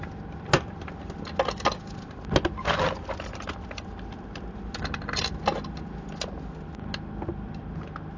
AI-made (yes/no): no